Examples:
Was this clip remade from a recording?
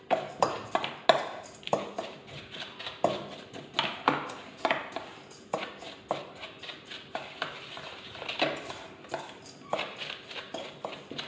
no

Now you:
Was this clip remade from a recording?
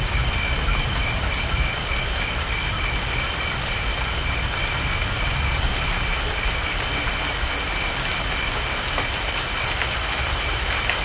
no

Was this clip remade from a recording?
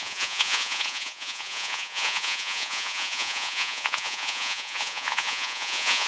yes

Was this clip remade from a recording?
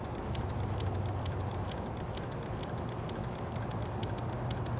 no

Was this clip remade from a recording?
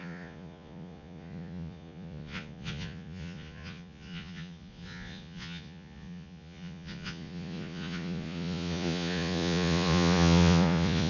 yes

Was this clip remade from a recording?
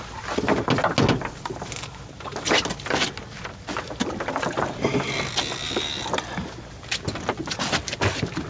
no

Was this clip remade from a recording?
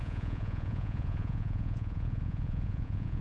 yes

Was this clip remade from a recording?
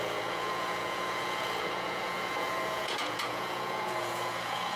yes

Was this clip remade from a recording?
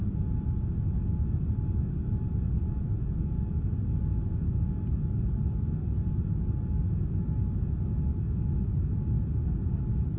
no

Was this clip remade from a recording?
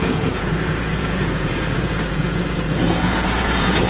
yes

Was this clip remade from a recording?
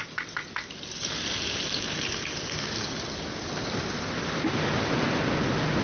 no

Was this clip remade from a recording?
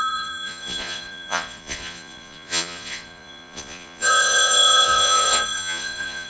yes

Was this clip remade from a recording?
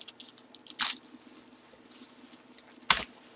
no